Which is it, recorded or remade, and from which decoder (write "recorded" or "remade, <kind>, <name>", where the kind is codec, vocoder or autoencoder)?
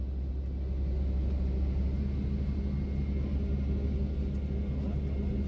recorded